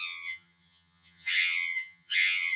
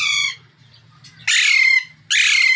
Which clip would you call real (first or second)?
second